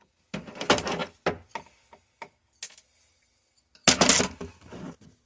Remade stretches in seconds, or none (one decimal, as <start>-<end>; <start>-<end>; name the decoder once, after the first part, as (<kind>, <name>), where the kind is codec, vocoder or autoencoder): none